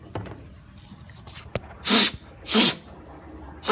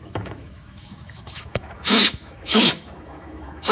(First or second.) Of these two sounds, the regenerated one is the second